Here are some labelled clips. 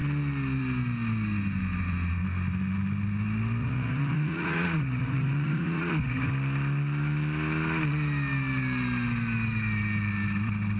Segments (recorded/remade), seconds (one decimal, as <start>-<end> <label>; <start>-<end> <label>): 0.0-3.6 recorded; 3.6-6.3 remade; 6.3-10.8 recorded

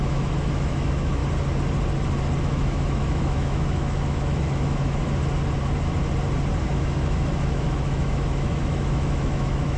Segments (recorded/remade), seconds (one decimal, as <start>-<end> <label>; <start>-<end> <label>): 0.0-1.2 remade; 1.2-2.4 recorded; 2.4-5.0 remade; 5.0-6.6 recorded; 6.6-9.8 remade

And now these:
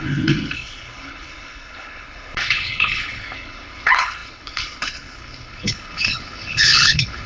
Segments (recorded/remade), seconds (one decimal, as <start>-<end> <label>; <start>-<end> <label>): 0.0-7.3 remade

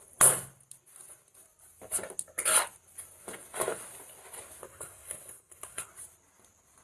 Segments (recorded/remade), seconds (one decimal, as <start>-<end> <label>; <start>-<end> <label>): 0.0-4.6 recorded; 4.6-5.9 remade; 5.9-6.8 recorded

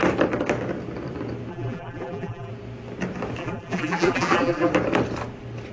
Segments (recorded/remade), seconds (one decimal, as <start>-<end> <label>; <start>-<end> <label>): 0.0-1.5 recorded; 1.5-2.5 remade; 2.5-3.4 recorded; 3.4-4.7 remade; 4.7-5.7 recorded

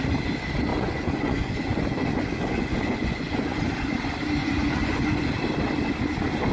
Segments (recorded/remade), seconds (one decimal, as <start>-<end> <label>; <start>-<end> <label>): 0.0-0.7 recorded; 0.7-3.6 remade; 3.6-4.4 recorded; 4.4-5.3 remade; 5.3-6.5 recorded

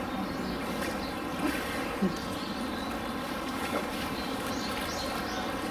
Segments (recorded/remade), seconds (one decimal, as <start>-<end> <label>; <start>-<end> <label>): 0.0-3.2 recorded; 3.2-4.5 remade; 4.5-5.7 recorded